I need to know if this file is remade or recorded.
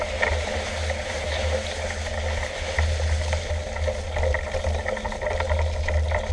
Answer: recorded